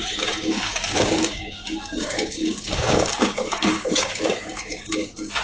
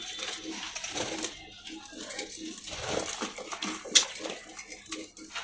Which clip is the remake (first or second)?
first